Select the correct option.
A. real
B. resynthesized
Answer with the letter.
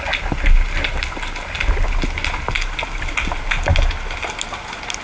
A